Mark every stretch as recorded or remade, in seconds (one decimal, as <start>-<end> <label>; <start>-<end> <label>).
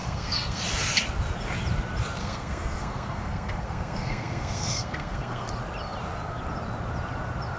0.0-0.6 remade; 0.6-2.2 recorded; 2.2-5.5 remade; 5.5-7.6 recorded